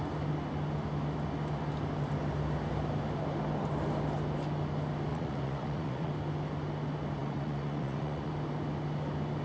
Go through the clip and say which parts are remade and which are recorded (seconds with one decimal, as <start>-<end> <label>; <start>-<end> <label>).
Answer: 0.0-5.1 recorded; 5.1-6.1 remade; 6.1-7.2 recorded; 7.2-8.3 remade; 8.3-9.4 recorded